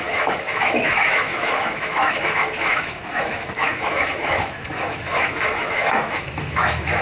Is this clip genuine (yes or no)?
no